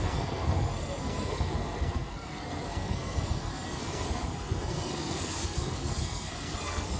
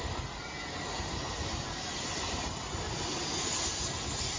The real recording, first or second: second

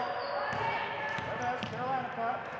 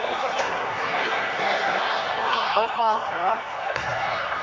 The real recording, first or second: first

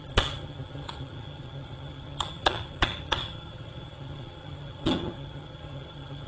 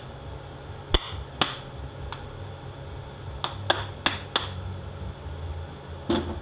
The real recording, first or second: second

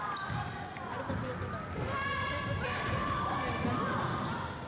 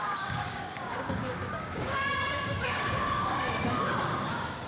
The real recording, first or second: first